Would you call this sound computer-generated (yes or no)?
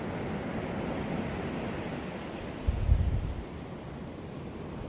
no